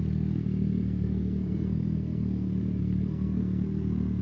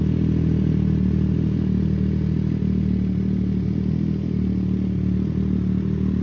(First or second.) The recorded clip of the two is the second